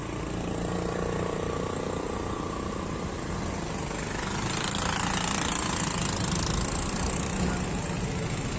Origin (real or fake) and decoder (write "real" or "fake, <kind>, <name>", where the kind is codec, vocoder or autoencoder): real